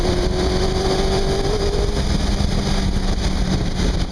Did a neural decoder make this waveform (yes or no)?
no